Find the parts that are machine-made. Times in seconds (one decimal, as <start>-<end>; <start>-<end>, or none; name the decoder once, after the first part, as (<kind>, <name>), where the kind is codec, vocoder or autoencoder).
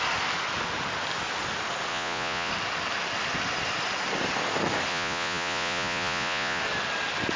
1.9-2.5 (vocoder, Vocos); 4.9-6.6